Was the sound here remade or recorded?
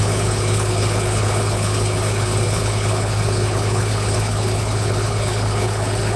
remade